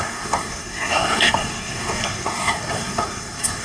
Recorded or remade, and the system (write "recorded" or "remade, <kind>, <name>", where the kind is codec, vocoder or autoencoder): remade, codec, SNAC